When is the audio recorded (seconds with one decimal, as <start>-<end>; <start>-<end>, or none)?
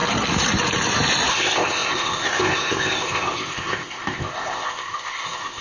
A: 0.0-1.3